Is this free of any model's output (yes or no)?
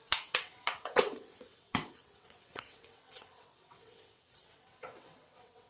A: no